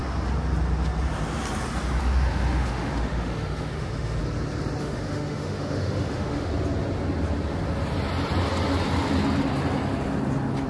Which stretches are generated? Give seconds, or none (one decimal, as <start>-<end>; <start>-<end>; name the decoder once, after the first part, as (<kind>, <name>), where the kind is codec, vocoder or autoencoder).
2.0-4.2 (autoencoder, DAC-VAE); 4.8-6.5